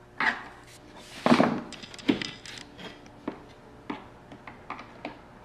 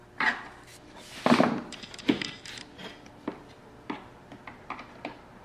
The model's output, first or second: second